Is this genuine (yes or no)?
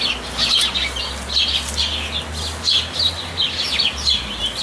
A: yes